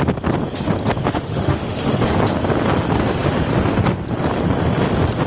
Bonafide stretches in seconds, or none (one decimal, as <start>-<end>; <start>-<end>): 0.0-1.1; 1.9-5.3